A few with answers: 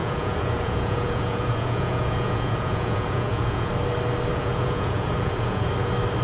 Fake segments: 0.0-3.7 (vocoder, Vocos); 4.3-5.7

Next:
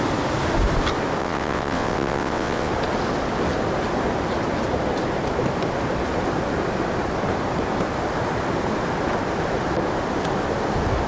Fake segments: 1.2-2.7 (vocoder, WaveNeXt)

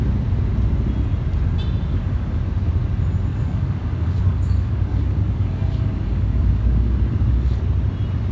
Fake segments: 1.9-2.4 (codec, DAC); 3.3-7.6

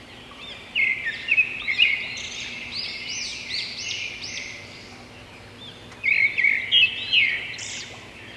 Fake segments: 0.0-3.3 (vocoder, BigVGAN v2); 7.2-8.4

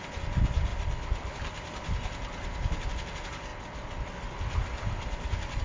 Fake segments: none

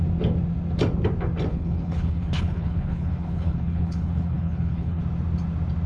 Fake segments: 1.5-5.0 (codec, HILCodec)